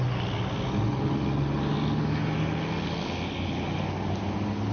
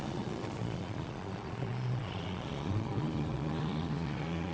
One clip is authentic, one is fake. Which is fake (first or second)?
second